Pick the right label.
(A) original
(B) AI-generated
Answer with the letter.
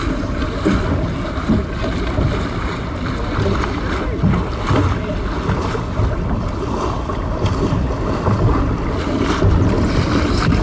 A